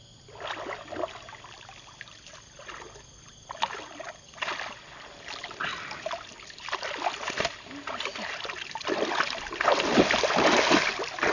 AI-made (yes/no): no